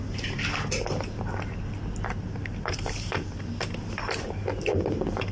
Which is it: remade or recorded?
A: recorded